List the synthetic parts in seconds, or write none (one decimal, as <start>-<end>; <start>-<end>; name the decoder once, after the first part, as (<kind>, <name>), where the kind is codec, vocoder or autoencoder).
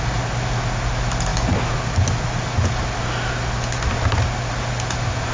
none